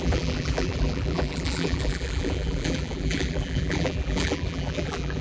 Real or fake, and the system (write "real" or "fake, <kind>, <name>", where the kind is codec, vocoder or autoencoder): fake, vocoder, BigVGAN v2